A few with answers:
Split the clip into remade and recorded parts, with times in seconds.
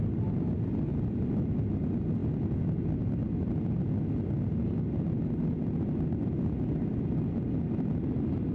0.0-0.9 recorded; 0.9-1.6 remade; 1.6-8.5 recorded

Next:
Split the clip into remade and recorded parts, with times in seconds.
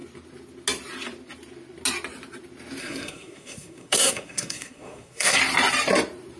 0.0-2.8 recorded; 2.8-5.4 remade; 5.4-6.4 recorded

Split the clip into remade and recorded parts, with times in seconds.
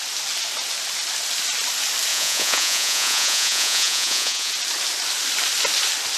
0.0-2.1 recorded; 2.1-4.5 remade; 4.5-6.2 recorded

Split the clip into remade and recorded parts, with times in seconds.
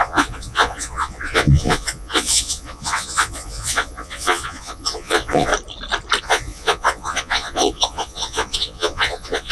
0.0-5.5 remade; 5.5-6.2 recorded; 6.2-9.5 remade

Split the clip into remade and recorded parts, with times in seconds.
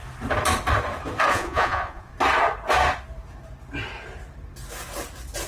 0.0-1.3 recorded; 1.3-2.1 remade; 2.1-5.5 recorded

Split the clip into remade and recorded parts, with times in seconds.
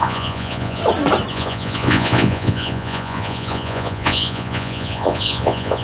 0.0-0.8 remade; 0.8-1.3 recorded; 1.3-5.8 remade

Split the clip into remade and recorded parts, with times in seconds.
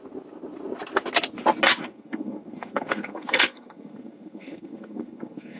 0.0-1.8 recorded; 1.8-5.6 remade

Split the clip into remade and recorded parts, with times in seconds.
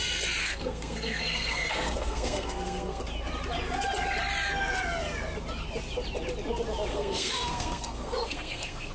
0.0-0.4 recorded; 0.4-3.0 remade; 3.0-6.9 recorded; 6.9-8.9 remade